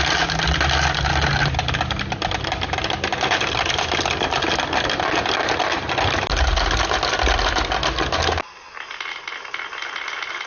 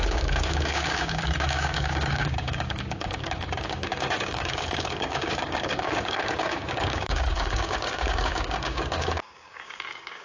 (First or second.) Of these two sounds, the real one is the first